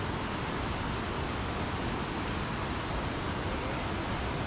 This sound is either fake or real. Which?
real